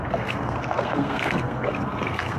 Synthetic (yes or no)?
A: yes